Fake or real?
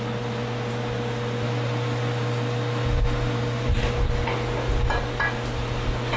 real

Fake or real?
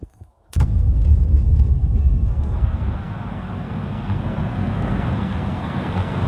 fake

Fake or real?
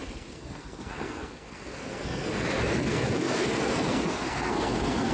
fake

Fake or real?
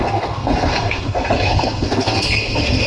fake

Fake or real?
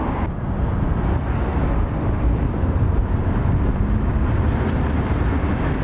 real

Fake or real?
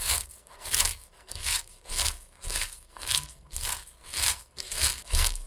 fake